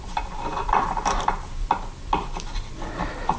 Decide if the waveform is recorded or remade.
recorded